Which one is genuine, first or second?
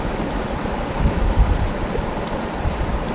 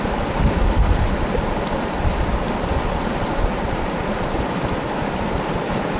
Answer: second